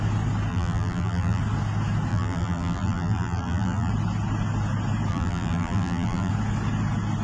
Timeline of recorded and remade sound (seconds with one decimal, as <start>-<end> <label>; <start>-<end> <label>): 0.0-0.5 recorded; 0.5-1.4 remade; 1.4-2.1 recorded; 2.1-3.9 remade; 3.9-5.1 recorded; 5.1-6.3 remade; 6.3-7.2 recorded